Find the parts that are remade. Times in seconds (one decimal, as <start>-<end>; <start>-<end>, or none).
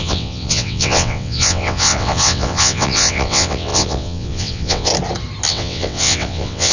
0.0-4.9; 5.5-6.7